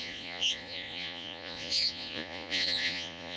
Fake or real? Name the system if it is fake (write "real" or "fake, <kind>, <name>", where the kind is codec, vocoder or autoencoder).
fake, vocoder, Vocos